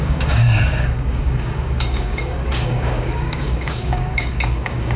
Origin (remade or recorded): remade